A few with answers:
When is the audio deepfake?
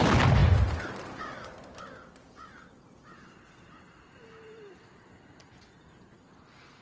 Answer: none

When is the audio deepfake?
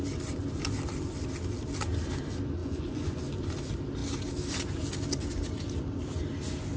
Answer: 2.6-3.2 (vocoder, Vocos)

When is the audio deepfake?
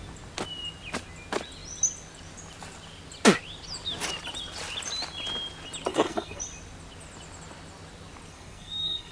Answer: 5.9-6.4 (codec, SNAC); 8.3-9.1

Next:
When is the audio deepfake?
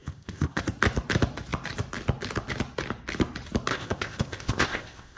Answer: 0.0-0.6 (codec, ZipCodec); 3.7-5.2